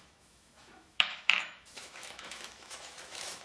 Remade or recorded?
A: remade